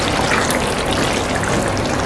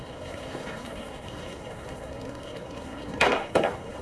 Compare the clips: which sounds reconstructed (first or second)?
second